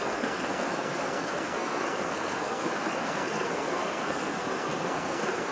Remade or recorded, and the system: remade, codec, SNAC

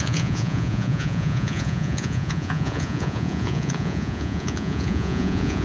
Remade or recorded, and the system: remade, vocoder, Vocos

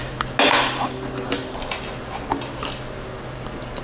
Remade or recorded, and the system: recorded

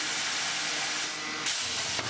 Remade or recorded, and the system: recorded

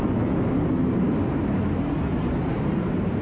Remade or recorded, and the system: recorded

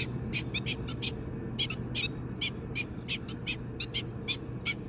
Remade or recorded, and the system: recorded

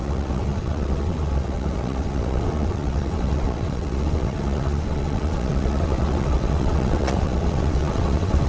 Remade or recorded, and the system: remade, vocoder, WaveNeXt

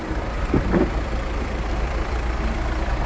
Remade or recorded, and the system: remade, vocoder, BigVGAN v2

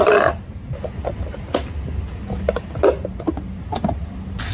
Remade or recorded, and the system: recorded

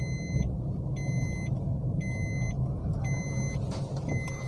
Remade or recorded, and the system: recorded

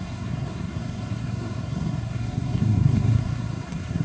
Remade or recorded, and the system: remade, codec, SNAC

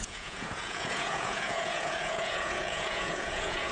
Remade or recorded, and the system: remade, vocoder, Vocos